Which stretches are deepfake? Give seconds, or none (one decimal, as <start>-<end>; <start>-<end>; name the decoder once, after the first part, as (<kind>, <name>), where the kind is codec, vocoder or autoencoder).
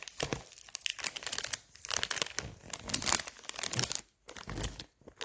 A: none